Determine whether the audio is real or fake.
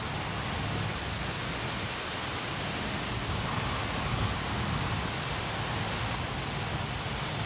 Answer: real